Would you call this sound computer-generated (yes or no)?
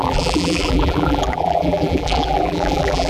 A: yes